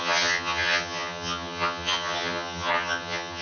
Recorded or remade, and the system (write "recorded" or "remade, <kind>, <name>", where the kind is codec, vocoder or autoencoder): remade, vocoder, HiFi-GAN